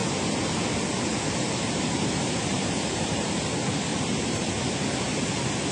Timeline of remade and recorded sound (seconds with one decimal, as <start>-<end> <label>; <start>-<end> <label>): 0.0-2.5 recorded; 2.5-3.1 remade; 3.1-3.9 recorded; 3.9-4.5 remade; 4.5-5.7 recorded